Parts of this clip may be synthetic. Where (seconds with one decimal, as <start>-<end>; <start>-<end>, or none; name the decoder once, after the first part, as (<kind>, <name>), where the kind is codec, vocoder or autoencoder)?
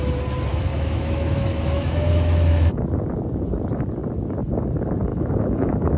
0.5-2.9 (autoencoder, DAC-VAE); 5.1-6.0